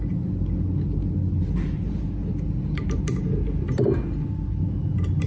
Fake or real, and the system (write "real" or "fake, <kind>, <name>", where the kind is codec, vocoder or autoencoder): real